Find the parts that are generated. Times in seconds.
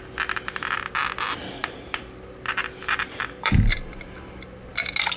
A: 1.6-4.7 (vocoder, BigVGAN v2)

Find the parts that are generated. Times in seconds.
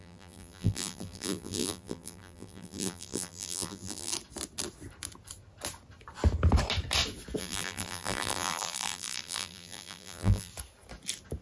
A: 0.0-4.1 (vocoder, BigVGAN v2); 7.4-10.5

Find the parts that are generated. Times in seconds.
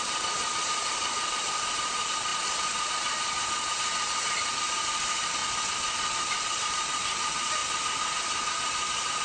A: 0.0-5.4 (vocoder, BigVGAN v2); 6.6-7.6; 8.6-9.2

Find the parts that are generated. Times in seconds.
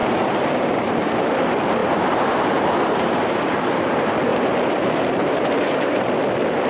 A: 0.0-1.2 (vocoder, BigVGAN v2); 1.8-3.9; 4.3-6.0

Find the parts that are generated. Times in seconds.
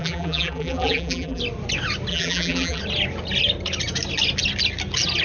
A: 0.0-1.4 (vocoder, BigVGAN v2); 2.1-2.8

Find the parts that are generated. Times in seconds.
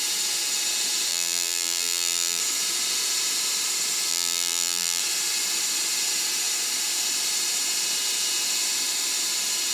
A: 1.1-2.4 (vocoder, BigVGAN v2); 4.1-5.0